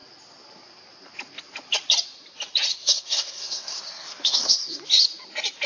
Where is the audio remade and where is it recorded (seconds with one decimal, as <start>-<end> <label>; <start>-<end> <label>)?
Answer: 0.0-2.7 recorded; 2.7-4.8 remade; 4.8-5.7 recorded